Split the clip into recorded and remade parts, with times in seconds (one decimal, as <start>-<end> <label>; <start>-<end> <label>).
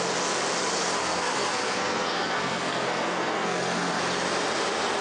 0.0-1.0 recorded; 1.0-4.0 remade; 4.0-5.0 recorded